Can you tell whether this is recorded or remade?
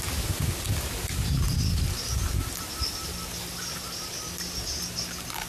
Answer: recorded